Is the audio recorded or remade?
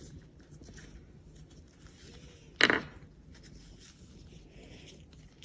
recorded